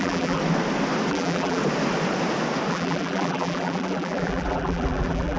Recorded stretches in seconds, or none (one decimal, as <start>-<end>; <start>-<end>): 0.4-1.1; 1.6-2.7